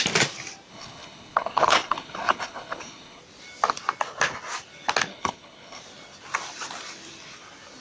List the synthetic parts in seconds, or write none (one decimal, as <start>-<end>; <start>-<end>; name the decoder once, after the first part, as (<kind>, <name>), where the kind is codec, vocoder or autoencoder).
0.7-3.2 (codec, HILCodec); 5.1-5.8